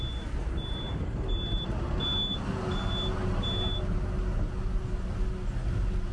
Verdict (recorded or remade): recorded